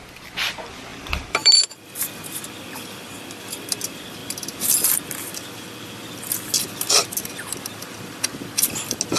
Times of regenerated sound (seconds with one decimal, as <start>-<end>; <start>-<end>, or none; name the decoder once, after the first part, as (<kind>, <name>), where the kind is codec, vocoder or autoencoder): 0.9-1.7 (vocoder, BigVGAN v2)

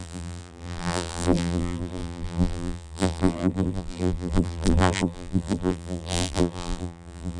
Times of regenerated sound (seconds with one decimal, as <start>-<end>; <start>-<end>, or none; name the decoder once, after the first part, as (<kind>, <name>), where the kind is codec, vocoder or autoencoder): 0.0-7.4 (vocoder, BigVGAN v2)

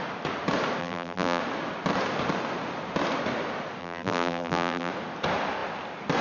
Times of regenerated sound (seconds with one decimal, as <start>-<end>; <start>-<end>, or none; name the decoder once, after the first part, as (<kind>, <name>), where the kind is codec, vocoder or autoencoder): 0.8-1.4 (vocoder, BigVGAN v2); 3.8-4.9

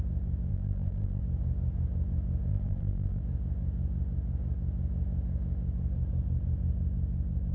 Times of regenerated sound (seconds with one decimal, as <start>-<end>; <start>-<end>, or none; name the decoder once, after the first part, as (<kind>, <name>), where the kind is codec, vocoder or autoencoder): 0.5-1.2 (vocoder, BigVGAN v2); 2.5-3.2

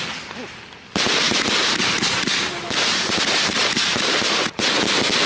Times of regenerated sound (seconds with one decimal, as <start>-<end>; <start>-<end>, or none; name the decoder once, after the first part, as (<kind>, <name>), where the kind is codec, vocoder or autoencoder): 1.6-4.5 (vocoder, BigVGAN v2)

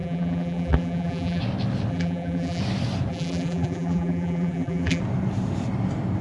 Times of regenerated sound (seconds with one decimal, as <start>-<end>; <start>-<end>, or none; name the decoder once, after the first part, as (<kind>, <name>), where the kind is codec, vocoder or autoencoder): 0.0-1.4 (vocoder, BigVGAN v2); 1.9-2.6; 3.1-5.0